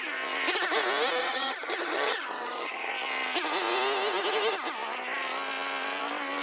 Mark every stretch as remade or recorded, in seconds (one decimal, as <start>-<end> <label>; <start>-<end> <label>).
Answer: 0.0-1.2 recorded; 1.2-2.9 remade; 2.9-6.4 recorded